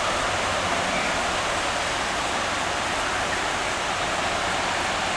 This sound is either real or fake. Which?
real